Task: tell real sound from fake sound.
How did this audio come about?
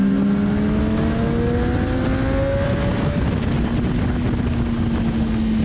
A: real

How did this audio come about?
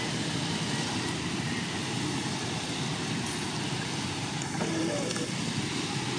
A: real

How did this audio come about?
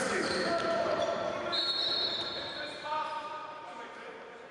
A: fake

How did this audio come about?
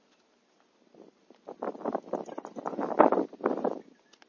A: real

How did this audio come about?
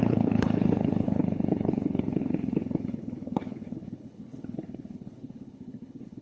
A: fake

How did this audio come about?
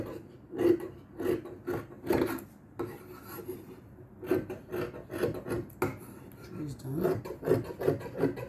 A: real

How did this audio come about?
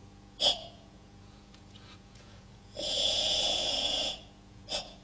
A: fake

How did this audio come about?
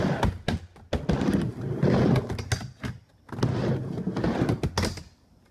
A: real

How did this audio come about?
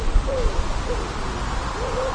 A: real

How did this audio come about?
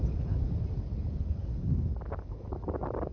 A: fake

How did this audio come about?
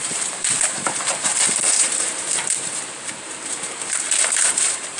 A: fake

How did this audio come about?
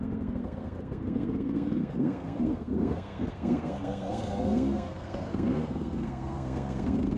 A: fake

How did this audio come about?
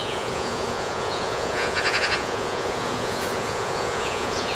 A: fake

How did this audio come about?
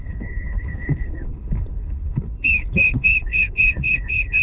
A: fake